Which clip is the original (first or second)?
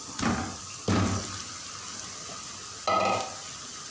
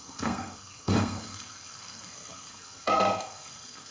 first